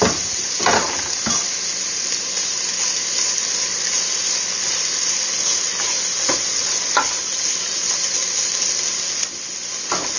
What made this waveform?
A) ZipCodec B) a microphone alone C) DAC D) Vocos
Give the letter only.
B